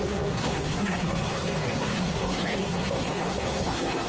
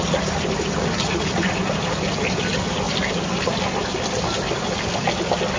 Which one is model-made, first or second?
first